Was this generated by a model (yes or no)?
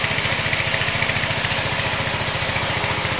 no